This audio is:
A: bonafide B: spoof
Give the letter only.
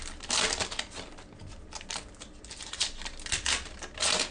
A